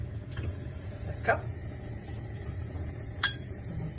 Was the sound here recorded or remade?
remade